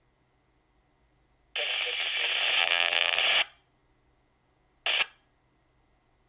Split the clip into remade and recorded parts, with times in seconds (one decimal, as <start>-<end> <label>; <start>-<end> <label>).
0.0-2.6 recorded; 2.6-3.2 remade; 3.2-6.3 recorded

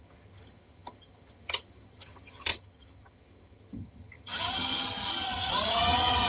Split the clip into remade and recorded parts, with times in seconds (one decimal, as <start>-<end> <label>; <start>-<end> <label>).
0.0-6.3 remade

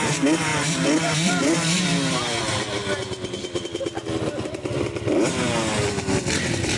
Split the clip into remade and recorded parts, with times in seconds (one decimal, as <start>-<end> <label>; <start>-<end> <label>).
0.0-2.8 remade; 2.8-6.0 recorded; 6.0-6.8 remade

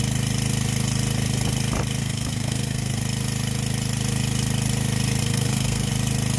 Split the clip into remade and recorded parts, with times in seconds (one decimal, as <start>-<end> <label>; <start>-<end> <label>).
0.0-2.0 recorded; 2.0-3.0 remade; 3.0-5.2 recorded; 5.2-5.9 remade; 5.9-6.4 recorded

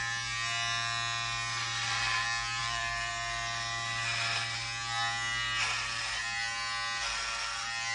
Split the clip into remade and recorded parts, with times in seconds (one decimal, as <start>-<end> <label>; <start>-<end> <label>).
0.0-2.6 recorded; 2.6-3.1 remade; 3.1-7.9 recorded

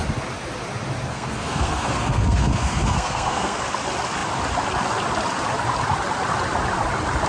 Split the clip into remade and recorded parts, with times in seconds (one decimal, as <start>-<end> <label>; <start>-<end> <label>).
0.0-1.1 recorded; 1.1-3.6 remade; 3.6-7.3 recorded